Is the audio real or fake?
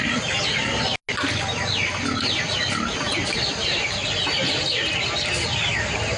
real